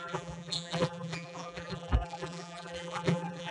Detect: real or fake fake